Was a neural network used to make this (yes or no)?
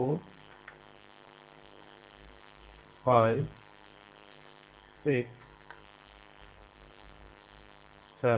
yes